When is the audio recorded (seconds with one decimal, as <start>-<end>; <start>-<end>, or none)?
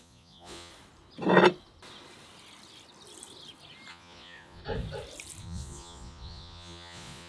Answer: 0.7-3.9; 4.6-5.4